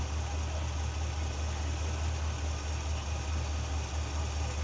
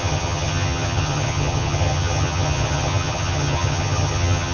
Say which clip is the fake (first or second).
second